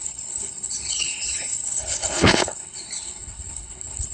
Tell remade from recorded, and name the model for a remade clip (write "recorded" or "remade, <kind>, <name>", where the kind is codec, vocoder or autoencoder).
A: remade, codec, HILCodec